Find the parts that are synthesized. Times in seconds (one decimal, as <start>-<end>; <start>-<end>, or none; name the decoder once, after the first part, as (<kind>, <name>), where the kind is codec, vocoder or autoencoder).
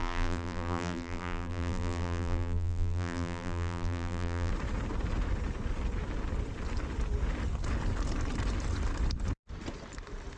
0.0-4.5 (vocoder, BigVGAN v2)